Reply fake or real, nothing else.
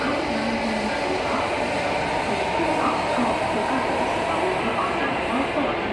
real